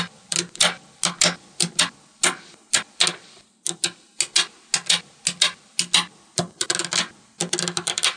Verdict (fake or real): real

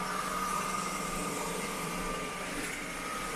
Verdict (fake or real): fake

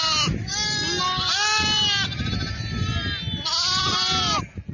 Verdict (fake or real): real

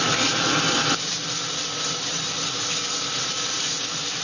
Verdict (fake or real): real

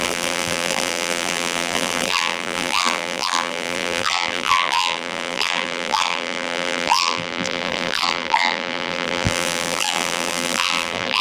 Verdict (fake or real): fake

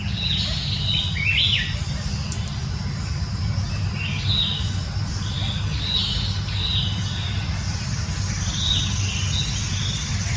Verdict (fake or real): real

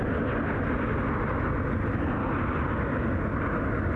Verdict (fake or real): real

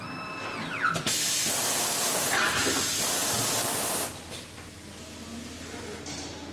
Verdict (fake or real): real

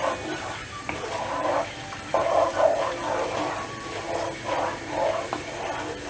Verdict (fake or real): fake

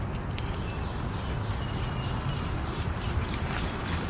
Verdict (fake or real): fake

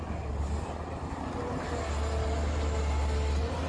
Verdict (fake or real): real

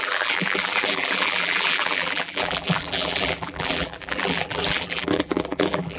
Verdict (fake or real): fake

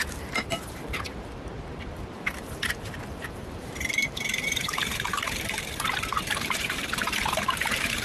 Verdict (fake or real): fake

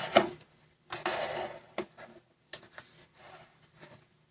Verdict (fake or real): real